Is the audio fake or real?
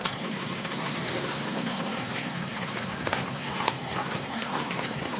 fake